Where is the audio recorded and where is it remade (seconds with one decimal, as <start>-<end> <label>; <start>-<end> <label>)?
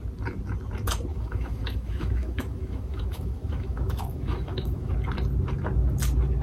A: 0.0-1.1 recorded; 1.1-4.9 remade; 4.9-6.4 recorded